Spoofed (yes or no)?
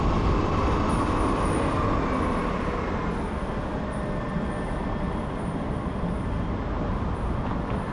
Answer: no